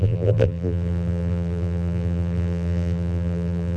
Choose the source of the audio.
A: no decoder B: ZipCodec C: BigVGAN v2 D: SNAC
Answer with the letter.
C